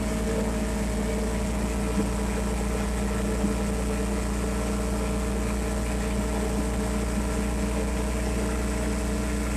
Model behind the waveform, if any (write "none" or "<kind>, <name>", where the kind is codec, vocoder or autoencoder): none